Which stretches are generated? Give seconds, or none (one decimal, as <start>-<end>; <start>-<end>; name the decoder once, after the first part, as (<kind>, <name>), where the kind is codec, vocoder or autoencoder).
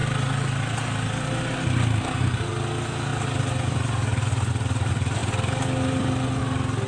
none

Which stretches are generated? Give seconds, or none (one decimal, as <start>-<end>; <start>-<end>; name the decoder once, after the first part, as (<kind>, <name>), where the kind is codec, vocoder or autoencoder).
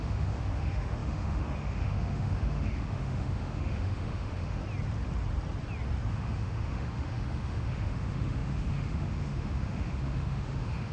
0.0-4.6 (autoencoder, DAC-VAE); 6.1-10.9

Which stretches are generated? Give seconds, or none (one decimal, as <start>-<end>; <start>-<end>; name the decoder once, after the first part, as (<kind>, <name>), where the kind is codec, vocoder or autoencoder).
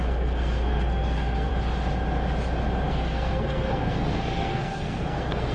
0.0-1.5 (codec, SNAC); 2.9-5.5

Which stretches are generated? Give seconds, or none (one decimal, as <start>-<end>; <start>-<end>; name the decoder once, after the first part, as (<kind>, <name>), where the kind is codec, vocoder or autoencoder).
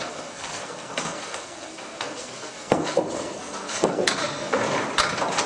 0.0-4.6 (codec, SNAC)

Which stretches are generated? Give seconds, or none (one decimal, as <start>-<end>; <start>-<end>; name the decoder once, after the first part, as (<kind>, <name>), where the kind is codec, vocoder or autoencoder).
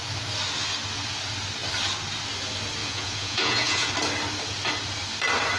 2.8-3.9 (vocoder, Vocos)